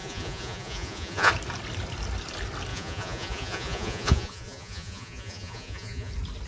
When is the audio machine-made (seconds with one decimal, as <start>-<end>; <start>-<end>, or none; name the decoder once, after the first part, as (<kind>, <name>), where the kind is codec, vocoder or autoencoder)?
0.0-1.3 (vocoder, Vocos); 2.7-6.1